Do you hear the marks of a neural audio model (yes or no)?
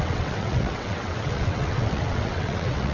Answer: yes